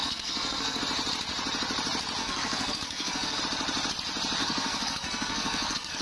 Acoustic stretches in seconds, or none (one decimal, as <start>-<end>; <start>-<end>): 0.8-2.2; 3.4-4.4